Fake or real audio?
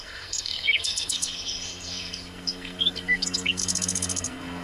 fake